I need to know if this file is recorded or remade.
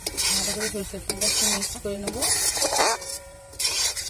remade